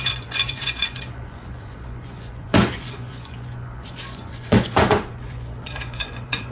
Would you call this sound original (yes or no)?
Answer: no